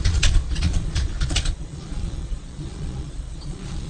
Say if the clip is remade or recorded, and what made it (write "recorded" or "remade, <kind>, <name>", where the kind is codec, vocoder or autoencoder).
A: remade, vocoder, Vocos